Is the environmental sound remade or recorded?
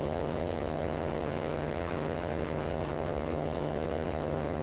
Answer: remade